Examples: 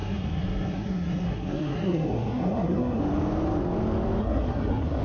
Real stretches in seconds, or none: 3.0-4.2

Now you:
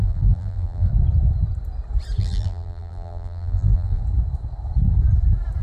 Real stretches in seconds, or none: 0.9-2.2; 4.0-5.6

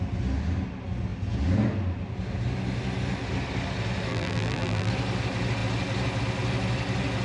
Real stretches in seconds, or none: 0.0-4.1; 4.9-7.2

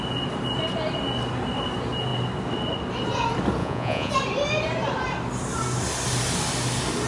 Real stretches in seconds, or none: 0.0-3.6; 4.1-7.1

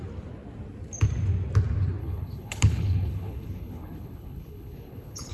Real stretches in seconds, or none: 0.0-2.0

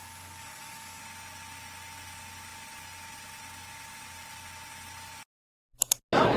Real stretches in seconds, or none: 1.0-6.4

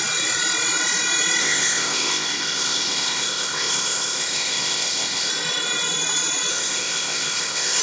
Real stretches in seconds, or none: 0.0-1.4; 5.3-6.5

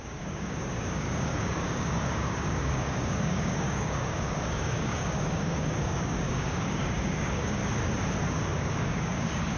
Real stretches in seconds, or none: 7.6-8.3